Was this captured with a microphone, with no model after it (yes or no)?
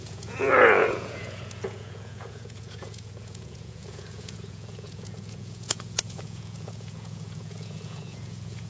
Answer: no